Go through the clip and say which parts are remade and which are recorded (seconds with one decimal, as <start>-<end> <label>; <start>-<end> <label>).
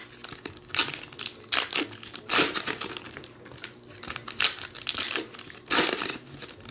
0.0-6.7 recorded